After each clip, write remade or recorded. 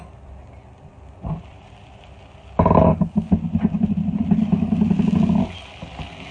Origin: recorded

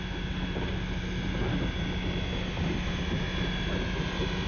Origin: recorded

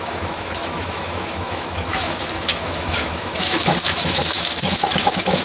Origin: remade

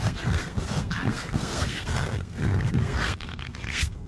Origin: remade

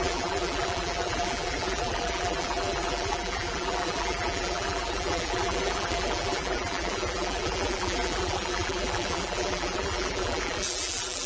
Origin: remade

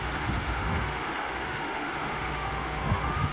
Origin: remade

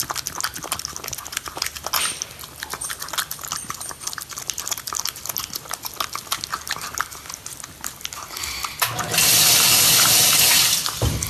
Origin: recorded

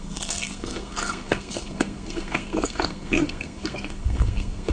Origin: remade